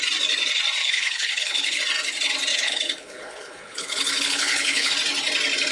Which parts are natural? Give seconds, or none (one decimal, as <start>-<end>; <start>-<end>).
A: 0.0-0.8; 1.8-2.5; 4.9-5.7